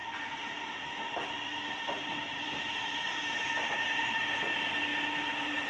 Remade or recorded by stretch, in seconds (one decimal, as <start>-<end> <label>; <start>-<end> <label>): 0.0-0.9 remade; 0.9-2.2 recorded; 2.2-2.7 remade; 2.7-3.1 recorded; 3.1-4.2 remade; 4.2-5.7 recorded